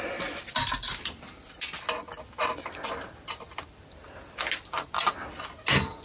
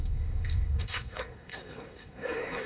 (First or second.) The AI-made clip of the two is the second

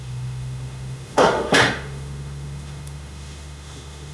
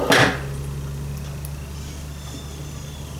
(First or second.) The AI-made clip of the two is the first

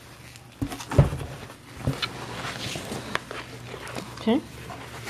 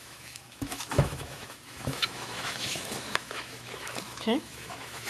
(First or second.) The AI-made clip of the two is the second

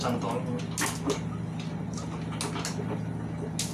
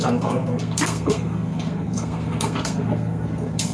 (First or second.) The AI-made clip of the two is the second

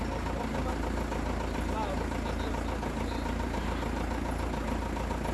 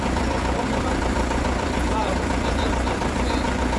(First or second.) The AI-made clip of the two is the second